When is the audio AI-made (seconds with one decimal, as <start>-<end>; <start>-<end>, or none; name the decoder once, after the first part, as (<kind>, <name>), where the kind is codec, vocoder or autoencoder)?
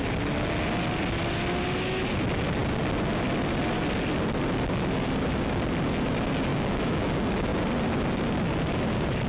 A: 6.5-7.1 (autoencoder, DAC-VAE)